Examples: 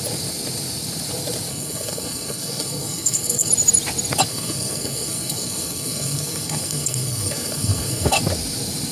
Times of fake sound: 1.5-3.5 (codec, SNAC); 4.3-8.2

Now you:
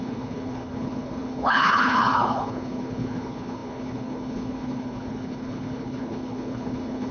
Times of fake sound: 0.0-7.1 (codec, HILCodec)